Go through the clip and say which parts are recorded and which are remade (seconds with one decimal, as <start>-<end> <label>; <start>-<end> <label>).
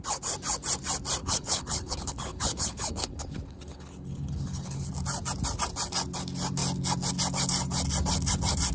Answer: 0.0-1.2 recorded; 1.2-4.9 remade; 4.9-8.7 recorded